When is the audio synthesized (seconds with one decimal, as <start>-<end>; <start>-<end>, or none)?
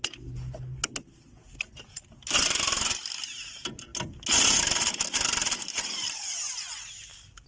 none